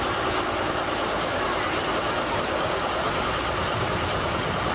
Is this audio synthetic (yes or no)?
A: no